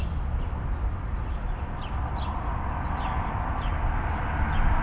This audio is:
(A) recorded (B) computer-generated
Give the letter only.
A